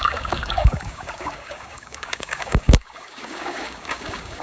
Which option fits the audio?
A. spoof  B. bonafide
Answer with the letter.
A